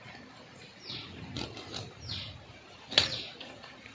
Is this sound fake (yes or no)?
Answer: no